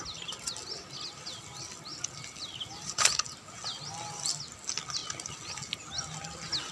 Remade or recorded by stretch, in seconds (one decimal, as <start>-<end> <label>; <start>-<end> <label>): 0.0-6.7 recorded